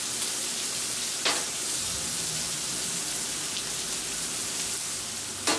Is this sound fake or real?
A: real